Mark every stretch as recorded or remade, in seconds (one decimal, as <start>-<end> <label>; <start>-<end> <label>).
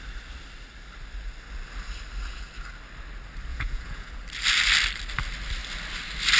0.0-3.5 recorded; 3.5-4.1 remade; 4.1-6.4 recorded